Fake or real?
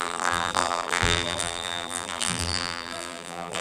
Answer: fake